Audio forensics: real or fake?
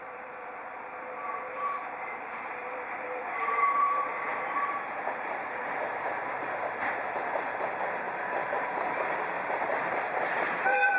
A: fake